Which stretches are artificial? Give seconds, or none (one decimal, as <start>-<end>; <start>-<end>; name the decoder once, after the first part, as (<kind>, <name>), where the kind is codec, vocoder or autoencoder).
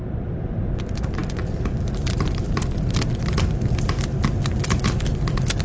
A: none